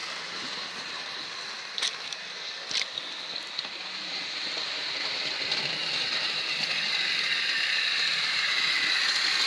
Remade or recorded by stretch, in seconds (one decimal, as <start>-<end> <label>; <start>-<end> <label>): 0.0-3.5 recorded; 3.5-5.8 remade; 5.8-7.8 recorded; 7.8-9.5 remade